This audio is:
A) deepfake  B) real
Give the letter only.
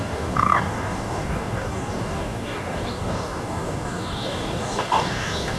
A